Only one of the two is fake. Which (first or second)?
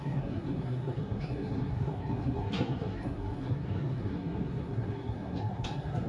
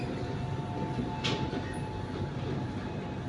first